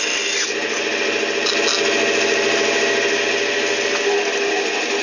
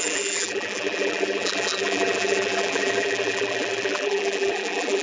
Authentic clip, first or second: first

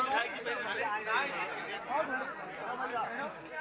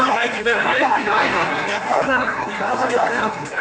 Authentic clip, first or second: first